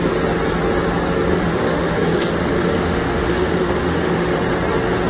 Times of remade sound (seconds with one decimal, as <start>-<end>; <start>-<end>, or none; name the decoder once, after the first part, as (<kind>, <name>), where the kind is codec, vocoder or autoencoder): 1.3-4.4 (autoencoder, DAC-VAE)